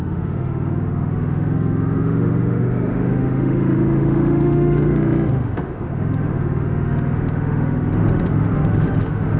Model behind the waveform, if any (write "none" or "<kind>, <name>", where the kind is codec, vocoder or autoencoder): autoencoder, DAC-VAE